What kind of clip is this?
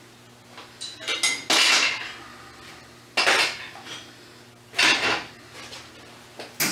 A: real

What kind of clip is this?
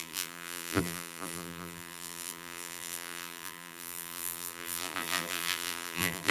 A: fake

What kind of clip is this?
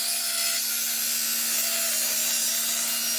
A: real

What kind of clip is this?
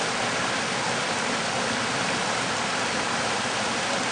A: fake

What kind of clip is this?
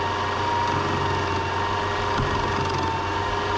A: real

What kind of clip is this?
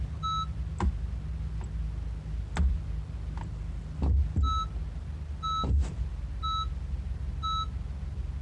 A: real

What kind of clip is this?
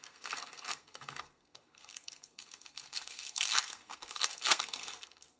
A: fake